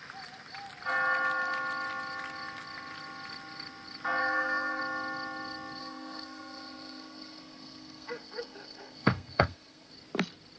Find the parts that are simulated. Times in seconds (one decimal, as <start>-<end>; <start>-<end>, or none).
4.2-4.8; 5.8-9.9